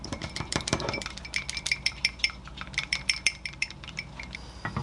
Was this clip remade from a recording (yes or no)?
yes